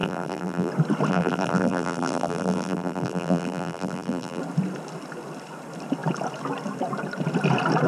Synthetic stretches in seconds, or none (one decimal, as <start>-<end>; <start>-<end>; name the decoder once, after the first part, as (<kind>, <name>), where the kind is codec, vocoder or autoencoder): 0.0-0.7 (vocoder, BigVGAN v2); 1.1-4.4